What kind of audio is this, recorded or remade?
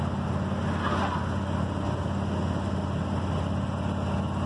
recorded